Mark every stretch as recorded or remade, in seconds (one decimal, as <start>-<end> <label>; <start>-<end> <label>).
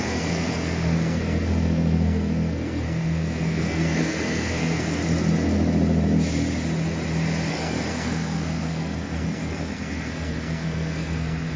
0.0-5.0 remade; 5.0-7.5 recorded; 7.5-11.6 remade